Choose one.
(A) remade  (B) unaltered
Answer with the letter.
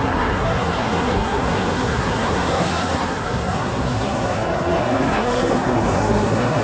A